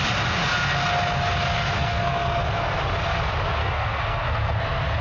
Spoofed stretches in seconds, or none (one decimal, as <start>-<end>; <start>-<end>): 1.8-2.4; 3.6-4.6